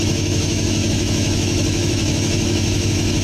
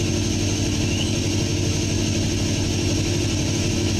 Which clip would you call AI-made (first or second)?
first